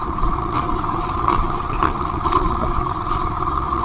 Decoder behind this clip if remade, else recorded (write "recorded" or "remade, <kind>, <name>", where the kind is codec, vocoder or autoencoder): remade, vocoder, Vocos